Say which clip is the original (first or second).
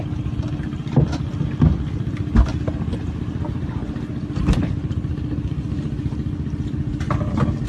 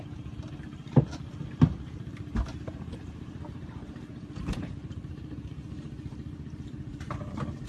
first